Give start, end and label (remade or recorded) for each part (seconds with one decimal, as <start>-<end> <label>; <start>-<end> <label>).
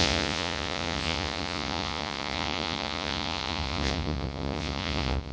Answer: 0.0-5.3 remade